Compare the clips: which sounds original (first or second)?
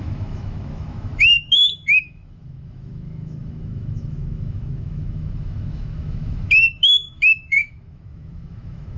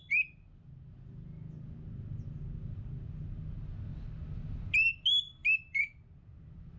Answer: second